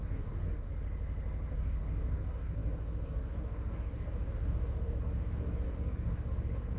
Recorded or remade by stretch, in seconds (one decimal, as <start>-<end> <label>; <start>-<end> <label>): 0.0-0.7 remade; 0.7-1.5 recorded; 1.5-6.8 remade